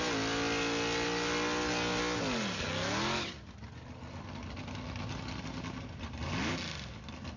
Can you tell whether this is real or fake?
real